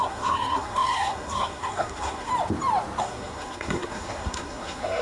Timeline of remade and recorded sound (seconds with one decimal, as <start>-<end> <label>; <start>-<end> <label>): 0.0-2.3 remade; 2.3-3.0 recorded; 3.0-5.0 remade